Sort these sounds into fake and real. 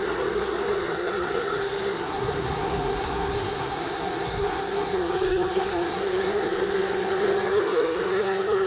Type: fake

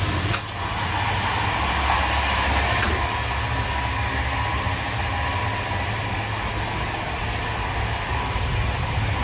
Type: real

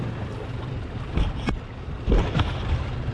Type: real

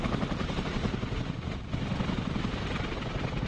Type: real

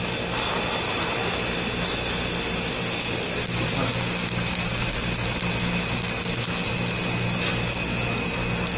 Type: real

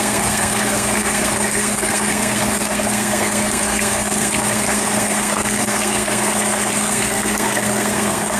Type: fake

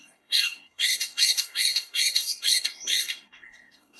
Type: fake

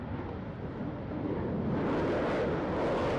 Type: real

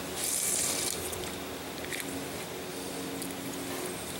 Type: real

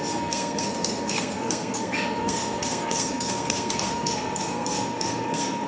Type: fake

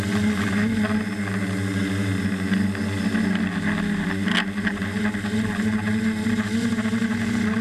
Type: real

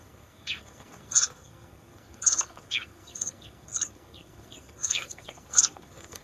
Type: fake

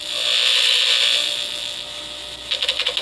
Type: real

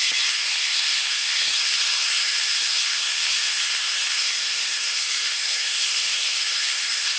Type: fake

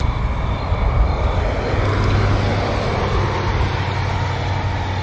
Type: real